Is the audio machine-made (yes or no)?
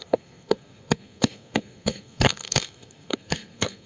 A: yes